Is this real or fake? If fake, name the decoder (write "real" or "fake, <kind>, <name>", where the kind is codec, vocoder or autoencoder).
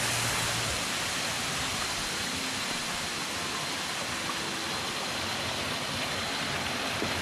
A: real